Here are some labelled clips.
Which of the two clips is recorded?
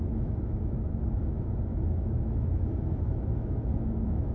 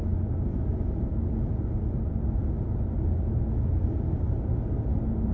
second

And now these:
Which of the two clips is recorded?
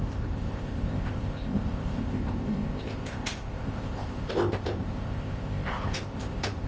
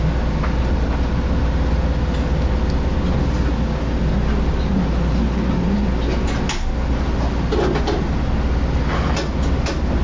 second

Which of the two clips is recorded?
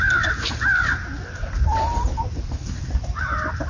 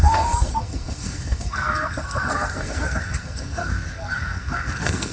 first